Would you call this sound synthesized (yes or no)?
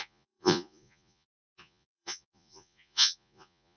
yes